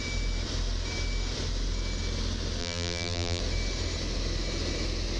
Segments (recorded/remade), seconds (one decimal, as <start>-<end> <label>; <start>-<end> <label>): 0.0-2.6 recorded; 2.6-3.4 remade; 3.4-5.2 recorded